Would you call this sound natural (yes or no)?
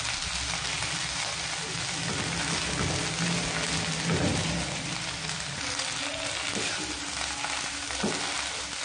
yes